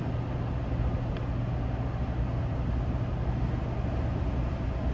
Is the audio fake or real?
real